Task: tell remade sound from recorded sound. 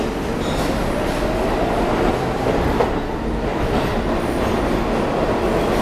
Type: recorded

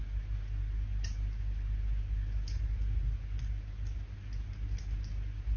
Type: recorded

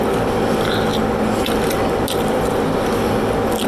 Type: recorded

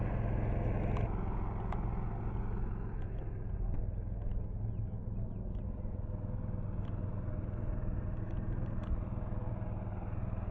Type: recorded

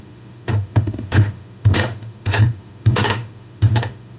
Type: remade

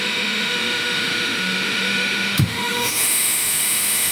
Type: remade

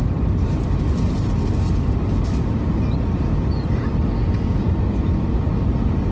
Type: recorded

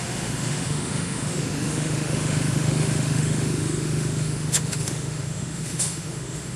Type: remade